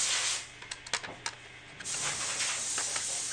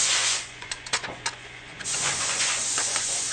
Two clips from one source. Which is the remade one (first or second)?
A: second